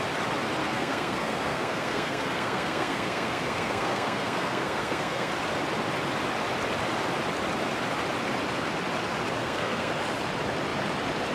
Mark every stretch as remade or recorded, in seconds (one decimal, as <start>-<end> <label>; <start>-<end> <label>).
0.0-0.6 recorded; 0.6-5.3 remade; 5.3-9.4 recorded; 9.4-9.9 remade; 9.9-11.3 recorded